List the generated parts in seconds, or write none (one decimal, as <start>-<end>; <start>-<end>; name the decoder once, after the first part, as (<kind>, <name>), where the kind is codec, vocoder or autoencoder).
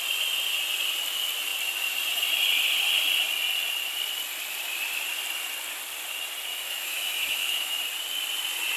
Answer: 6.5-7.8 (autoencoder, DAC-VAE)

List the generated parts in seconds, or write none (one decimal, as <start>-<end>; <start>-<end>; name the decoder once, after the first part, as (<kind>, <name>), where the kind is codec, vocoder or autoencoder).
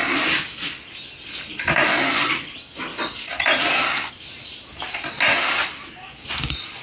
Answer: none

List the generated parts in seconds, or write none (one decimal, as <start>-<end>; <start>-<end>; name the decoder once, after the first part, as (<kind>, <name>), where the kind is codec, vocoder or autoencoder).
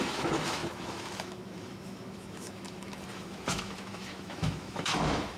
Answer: 0.0-5.4 (autoencoder, DAC-VAE)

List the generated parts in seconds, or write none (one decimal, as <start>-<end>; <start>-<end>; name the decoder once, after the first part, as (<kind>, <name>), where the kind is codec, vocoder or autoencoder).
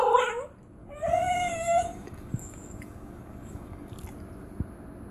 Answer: 0.8-3.9 (codec, DAC)